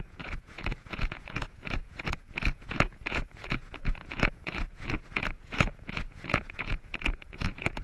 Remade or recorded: remade